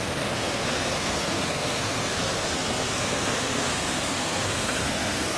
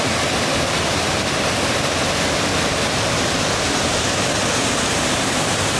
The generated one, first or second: first